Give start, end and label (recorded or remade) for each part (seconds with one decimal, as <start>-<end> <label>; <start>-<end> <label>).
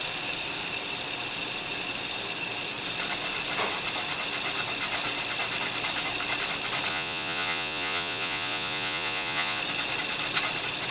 0.0-6.9 recorded; 6.9-9.6 remade; 9.6-10.9 recorded